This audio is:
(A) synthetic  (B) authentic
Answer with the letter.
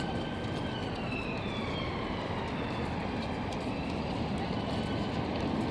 B